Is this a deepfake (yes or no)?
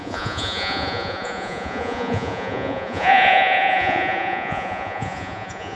yes